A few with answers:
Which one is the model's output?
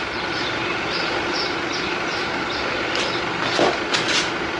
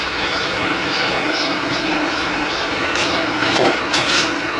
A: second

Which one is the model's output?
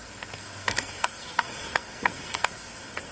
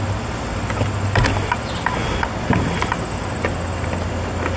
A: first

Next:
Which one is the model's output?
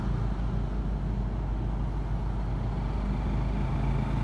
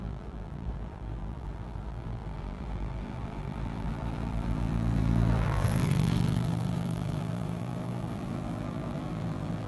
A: second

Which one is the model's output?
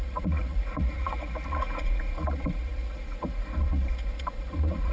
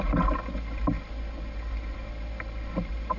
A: first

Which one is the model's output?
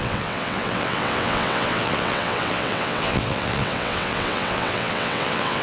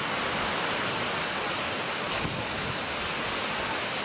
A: first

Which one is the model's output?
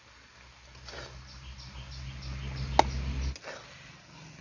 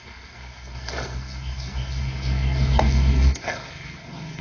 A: second